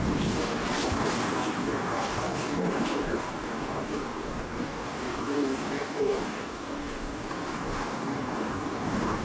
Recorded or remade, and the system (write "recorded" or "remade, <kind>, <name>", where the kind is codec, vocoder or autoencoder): remade, codec, DAC